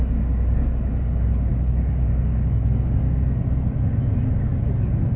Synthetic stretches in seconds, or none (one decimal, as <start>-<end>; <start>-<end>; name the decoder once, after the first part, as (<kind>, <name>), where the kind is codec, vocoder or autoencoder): 1.5-3.4 (codec, DAC)